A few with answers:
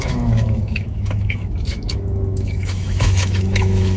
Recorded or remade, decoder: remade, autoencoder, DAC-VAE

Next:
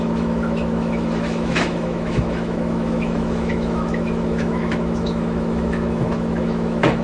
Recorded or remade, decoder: remade, autoencoder, DAC-VAE